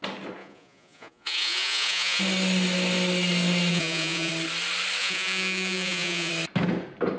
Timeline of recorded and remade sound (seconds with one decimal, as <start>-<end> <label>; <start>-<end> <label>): 0.0-0.4 recorded; 0.4-2.2 remade; 2.2-3.7 recorded; 3.7-4.3 remade; 4.3-5.0 recorded; 5.0-6.3 remade; 6.3-7.2 recorded